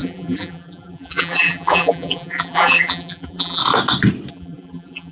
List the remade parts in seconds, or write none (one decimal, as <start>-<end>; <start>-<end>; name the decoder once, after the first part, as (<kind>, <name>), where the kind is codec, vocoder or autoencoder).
0.0-3.6 (vocoder, BigVGAN v2); 4.3-5.1